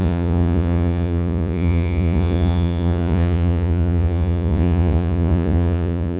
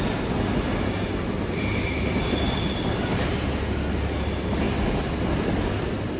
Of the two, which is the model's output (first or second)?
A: first